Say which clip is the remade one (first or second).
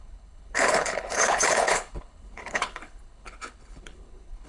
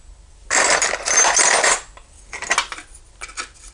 first